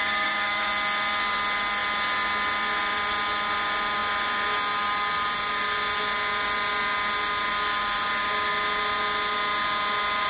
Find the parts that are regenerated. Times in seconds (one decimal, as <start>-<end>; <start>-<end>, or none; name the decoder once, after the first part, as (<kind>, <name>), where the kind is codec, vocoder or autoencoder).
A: 0.0-0.7 (codec, DAC)